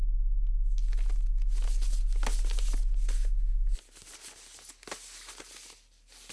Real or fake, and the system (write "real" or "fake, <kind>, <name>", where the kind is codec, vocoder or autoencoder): real